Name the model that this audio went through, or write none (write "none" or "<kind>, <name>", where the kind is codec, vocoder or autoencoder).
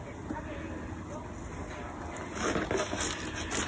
none